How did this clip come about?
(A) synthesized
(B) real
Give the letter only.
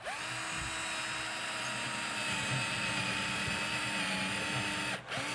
B